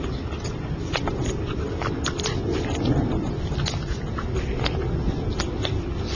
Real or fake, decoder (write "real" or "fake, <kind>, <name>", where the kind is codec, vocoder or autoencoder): real